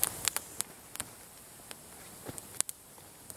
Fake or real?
real